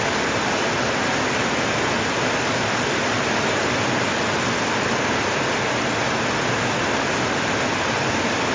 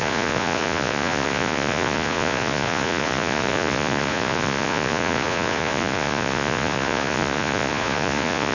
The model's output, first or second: second